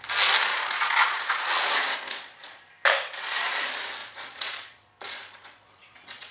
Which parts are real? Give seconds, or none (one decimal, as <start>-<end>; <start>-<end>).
0.0-0.5; 2.6-4.0